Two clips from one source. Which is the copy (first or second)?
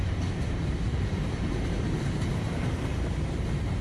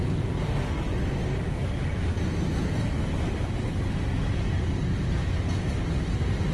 first